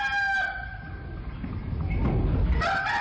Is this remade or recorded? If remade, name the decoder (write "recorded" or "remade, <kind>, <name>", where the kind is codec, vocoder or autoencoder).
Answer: recorded